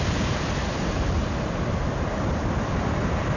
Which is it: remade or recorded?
recorded